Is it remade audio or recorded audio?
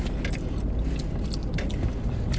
recorded